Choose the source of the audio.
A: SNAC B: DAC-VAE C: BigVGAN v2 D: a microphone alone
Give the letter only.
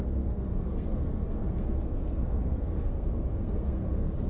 A